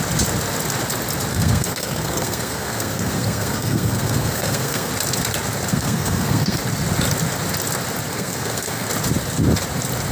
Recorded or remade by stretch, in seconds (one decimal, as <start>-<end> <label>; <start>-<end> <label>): 0.0-1.3 recorded; 1.3-4.9 remade; 4.9-5.7 recorded; 5.7-6.6 remade; 6.6-8.1 recorded; 8.1-8.9 remade; 8.9-10.1 recorded